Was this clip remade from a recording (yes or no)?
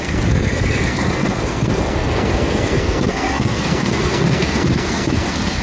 yes